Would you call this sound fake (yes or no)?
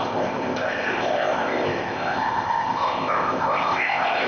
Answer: yes